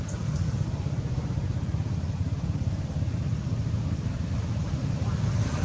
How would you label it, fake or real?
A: real